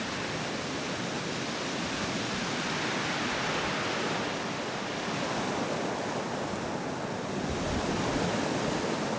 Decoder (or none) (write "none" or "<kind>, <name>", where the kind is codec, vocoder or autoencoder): none